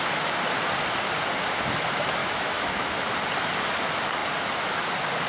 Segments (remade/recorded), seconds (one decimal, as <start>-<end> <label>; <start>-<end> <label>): 0.0-2.2 recorded; 2.2-3.1 remade; 3.1-5.3 recorded